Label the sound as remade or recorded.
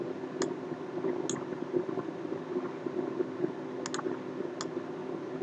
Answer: recorded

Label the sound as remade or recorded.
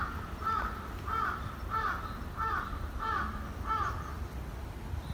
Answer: recorded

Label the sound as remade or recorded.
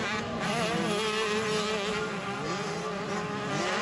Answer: recorded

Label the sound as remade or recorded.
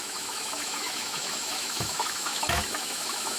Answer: remade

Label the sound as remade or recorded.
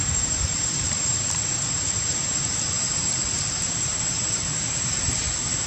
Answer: remade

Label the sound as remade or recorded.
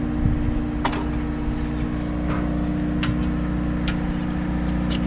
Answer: recorded